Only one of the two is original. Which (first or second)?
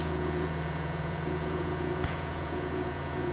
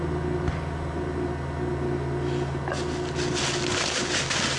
second